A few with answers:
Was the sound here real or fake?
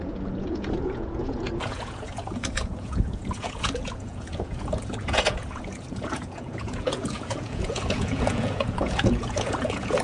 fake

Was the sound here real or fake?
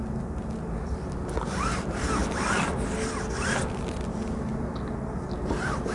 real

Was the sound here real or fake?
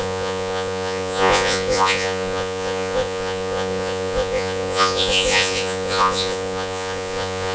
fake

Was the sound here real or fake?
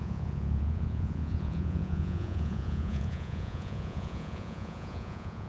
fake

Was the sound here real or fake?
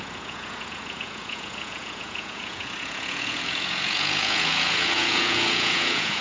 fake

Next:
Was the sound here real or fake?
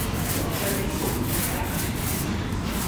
real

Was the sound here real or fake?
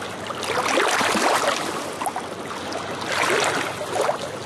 real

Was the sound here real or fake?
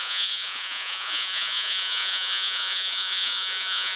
fake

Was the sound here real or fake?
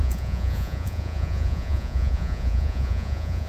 fake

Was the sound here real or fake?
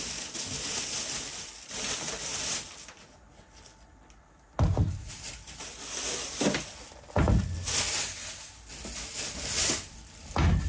real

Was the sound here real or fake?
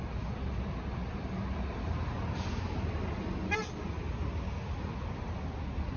real